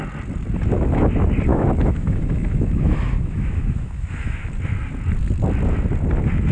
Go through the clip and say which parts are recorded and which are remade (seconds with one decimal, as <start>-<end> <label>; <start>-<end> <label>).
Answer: 0.0-1.5 recorded; 1.5-4.5 remade; 4.5-6.5 recorded